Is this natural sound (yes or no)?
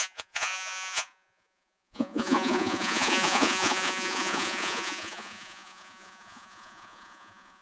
no